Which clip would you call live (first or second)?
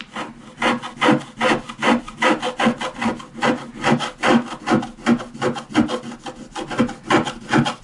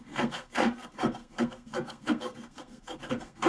first